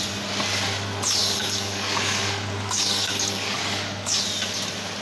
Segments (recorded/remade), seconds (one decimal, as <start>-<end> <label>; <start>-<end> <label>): 0.0-1.2 recorded; 1.2-4.2 remade; 4.2-5.0 recorded